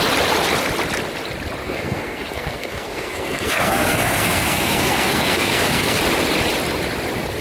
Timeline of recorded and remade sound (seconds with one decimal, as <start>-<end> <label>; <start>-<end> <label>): 0.0-1.6 recorded; 1.6-6.0 remade; 6.0-7.4 recorded